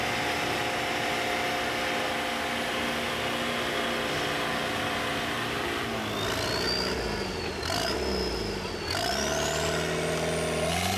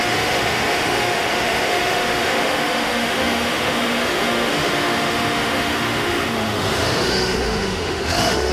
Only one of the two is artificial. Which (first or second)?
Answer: second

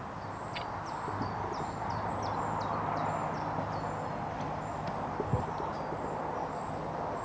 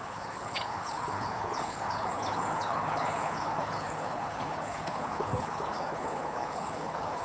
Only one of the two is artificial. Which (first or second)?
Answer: second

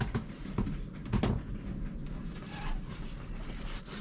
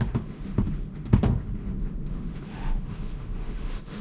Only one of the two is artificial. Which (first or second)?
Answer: second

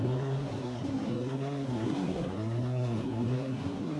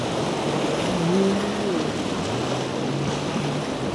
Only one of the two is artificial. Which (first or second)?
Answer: first